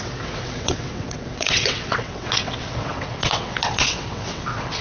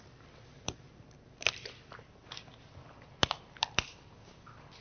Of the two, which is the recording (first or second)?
second